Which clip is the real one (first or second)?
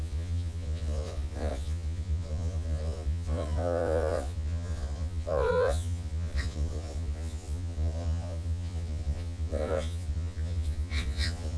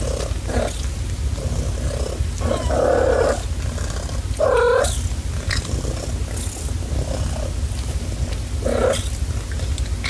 second